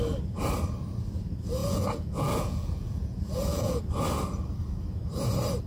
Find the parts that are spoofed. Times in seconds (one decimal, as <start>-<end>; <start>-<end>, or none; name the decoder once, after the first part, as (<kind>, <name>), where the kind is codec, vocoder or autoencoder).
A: 1.6-3.8 (vocoder, Vocos)